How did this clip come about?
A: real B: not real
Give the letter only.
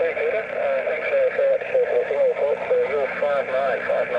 A